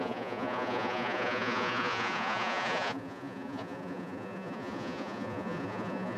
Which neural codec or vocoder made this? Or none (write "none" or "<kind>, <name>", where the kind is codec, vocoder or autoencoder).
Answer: vocoder, Vocos